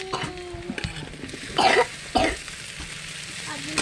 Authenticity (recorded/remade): recorded